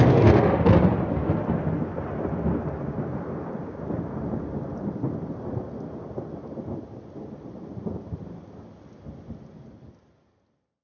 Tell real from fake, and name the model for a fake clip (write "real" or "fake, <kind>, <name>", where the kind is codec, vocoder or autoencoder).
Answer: real